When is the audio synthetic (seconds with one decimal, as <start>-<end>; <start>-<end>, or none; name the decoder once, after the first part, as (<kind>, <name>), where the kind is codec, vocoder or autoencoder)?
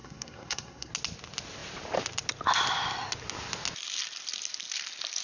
0.0-0.9 (codec, SNAC)